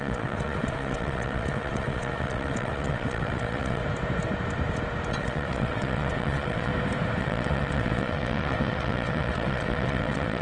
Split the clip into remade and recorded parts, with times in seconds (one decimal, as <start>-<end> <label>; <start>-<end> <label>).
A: 0.0-3.8 remade; 3.8-5.1 recorded; 5.1-6.7 remade; 6.7-7.2 recorded; 7.2-10.4 remade